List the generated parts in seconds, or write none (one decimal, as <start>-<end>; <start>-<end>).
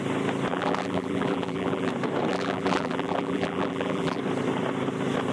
0.5-1.9; 2.3-4.2